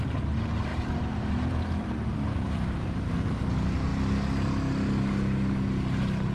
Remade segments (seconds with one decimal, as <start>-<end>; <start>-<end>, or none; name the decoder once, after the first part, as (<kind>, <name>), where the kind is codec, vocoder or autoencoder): 0.7-3.1 (vocoder, BigVGAN v2)